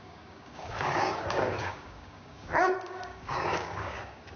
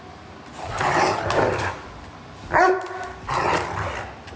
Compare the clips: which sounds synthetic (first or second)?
first